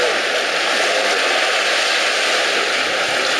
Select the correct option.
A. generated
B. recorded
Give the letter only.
B